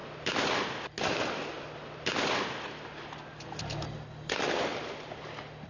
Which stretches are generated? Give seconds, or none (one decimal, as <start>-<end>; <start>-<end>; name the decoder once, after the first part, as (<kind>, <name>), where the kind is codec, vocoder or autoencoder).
4.7-5.7 (vocoder, BigVGAN v2)